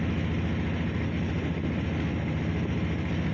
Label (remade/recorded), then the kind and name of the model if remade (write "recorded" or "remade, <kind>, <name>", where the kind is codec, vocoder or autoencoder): recorded